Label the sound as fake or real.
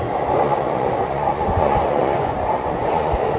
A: fake